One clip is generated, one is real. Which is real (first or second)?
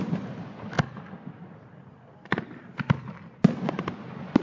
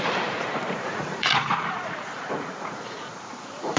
first